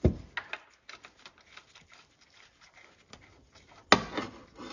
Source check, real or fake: real